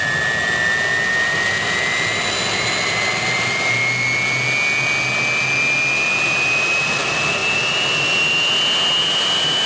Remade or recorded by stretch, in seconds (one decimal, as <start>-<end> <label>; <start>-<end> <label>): 0.0-9.7 recorded